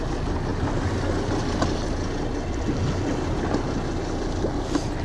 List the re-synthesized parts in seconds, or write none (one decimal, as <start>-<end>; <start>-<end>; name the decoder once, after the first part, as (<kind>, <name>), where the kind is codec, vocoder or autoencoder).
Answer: none